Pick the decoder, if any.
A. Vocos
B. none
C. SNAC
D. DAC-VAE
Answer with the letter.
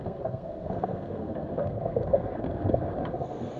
C